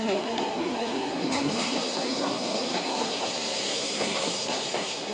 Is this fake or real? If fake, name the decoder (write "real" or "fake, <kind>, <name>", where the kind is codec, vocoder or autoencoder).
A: fake, codec, SNAC